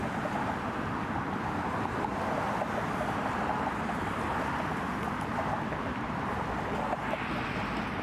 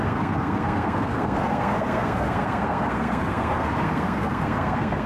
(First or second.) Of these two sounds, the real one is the first